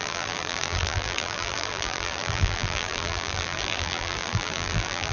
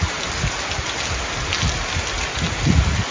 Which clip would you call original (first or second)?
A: second